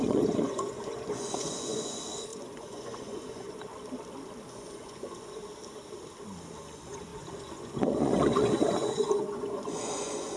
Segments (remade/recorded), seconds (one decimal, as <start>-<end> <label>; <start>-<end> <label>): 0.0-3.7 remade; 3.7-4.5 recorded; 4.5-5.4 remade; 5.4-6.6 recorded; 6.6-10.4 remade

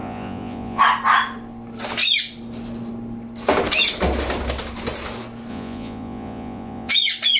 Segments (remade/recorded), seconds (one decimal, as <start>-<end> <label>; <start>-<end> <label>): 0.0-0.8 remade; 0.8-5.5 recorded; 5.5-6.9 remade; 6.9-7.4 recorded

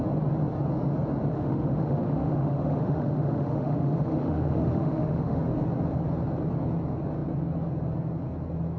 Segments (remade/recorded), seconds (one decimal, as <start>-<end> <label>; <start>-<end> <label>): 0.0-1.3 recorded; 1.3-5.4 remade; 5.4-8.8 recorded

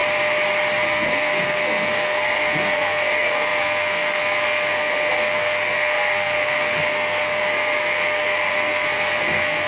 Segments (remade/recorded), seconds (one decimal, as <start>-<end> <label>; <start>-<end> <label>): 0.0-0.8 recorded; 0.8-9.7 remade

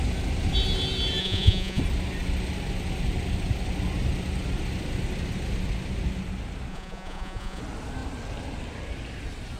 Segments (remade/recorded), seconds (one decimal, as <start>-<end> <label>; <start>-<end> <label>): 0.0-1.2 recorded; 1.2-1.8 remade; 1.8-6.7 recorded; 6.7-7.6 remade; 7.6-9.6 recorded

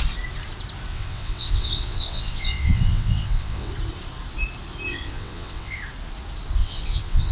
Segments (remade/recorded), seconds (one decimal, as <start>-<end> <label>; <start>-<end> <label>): 0.0-0.9 recorded; 0.9-3.7 remade; 3.7-4.9 recorded; 4.9-5.8 remade; 5.8-6.6 recorded; 6.6-7.3 remade